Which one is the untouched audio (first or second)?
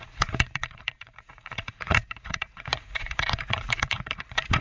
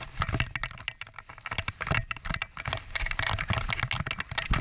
second